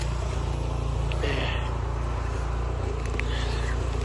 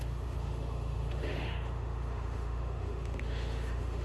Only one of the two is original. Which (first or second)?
first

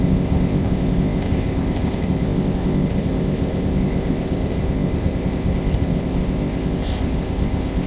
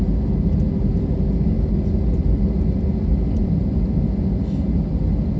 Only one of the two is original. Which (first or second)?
second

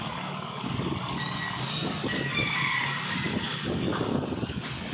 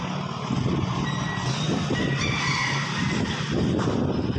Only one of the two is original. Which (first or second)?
second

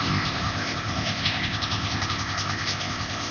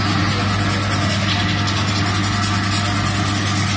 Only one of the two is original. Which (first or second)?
second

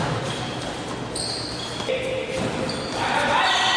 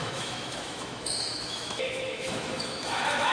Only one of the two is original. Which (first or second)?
first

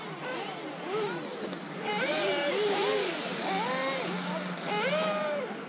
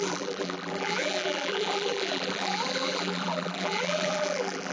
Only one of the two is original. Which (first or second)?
first